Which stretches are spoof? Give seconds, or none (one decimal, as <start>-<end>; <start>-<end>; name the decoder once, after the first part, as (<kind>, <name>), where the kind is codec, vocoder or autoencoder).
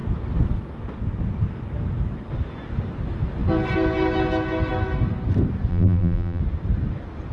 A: 5.7-6.4 (vocoder, BigVGAN v2)